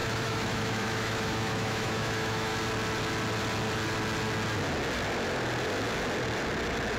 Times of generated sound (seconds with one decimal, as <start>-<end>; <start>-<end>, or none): 0.0-2.5